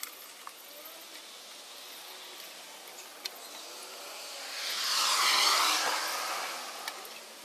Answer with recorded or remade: recorded